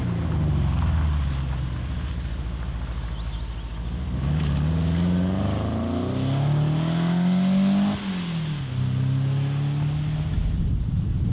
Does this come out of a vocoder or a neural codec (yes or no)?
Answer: no